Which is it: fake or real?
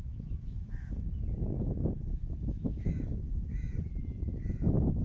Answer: fake